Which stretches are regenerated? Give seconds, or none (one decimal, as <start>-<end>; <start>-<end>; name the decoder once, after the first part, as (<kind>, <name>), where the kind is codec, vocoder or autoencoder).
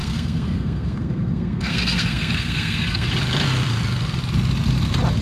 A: 0.0-3.1 (codec, SNAC)